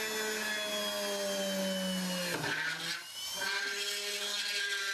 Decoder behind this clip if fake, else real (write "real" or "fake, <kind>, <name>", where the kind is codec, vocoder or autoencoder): real